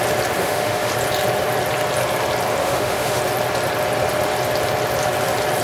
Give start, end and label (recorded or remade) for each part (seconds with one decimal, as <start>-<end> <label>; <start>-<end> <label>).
0.0-0.4 recorded; 0.4-0.9 remade; 0.9-2.6 recorded; 2.6-3.2 remade; 3.2-5.6 recorded